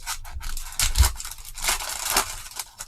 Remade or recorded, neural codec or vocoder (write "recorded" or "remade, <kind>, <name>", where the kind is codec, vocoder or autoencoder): recorded